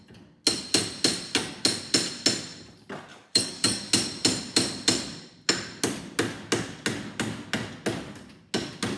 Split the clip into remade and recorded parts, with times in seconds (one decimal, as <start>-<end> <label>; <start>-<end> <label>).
0.0-3.1 recorded; 3.1-3.8 remade; 3.8-9.0 recorded